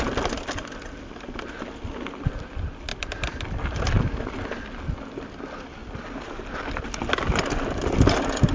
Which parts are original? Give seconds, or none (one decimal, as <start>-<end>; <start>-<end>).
0.0-8.5